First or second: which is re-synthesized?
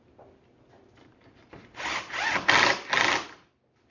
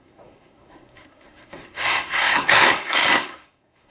second